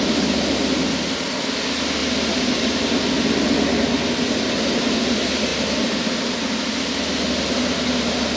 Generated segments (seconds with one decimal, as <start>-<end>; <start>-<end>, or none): none